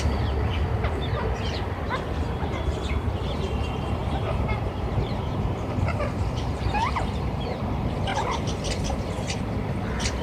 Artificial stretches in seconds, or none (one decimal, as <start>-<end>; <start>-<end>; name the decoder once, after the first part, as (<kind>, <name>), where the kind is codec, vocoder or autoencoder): 4.0-7.6 (vocoder, BigVGAN v2)